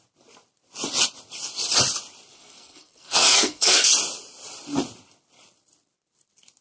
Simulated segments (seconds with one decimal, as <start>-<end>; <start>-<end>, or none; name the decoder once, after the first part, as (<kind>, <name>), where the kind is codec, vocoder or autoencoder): 2.3-3.9 (codec, SNAC)